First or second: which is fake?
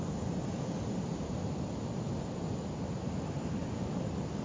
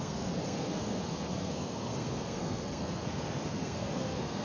second